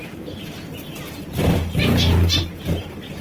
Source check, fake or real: fake